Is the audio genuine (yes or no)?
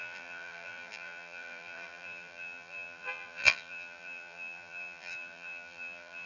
no